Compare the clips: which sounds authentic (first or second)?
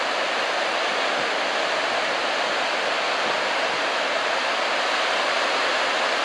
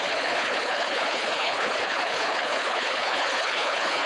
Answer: first